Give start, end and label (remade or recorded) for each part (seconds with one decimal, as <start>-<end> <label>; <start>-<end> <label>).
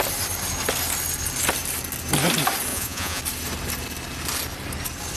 0.0-2.7 recorded; 2.7-3.2 remade; 3.2-5.2 recorded